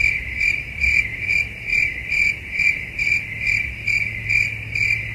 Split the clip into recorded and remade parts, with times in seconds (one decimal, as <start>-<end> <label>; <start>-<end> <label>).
0.0-5.1 recorded